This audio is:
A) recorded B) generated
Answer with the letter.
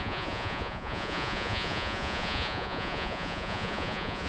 B